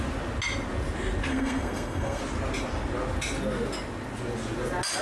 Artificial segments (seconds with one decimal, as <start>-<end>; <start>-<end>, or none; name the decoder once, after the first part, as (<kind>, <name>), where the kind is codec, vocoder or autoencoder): 1.3-2.2 (codec, SNAC)